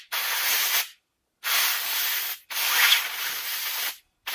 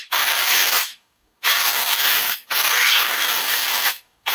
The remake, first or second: second